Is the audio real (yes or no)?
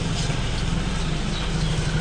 yes